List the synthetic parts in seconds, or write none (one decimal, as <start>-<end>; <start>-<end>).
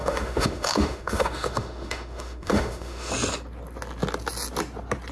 0.0-3.1